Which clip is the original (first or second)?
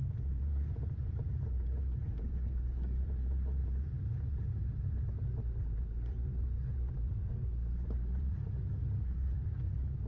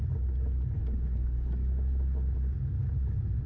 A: second